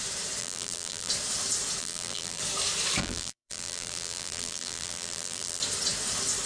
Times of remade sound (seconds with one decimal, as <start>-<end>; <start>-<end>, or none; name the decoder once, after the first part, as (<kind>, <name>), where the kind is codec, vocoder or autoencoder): 0.4-1.1 (vocoder, BigVGAN v2); 1.8-2.4; 3.0-5.6